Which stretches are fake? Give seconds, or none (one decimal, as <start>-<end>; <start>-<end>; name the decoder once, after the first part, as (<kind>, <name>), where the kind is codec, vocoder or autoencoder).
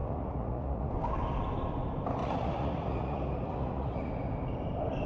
0.0-0.9 (vocoder, Vocos); 2.2-4.1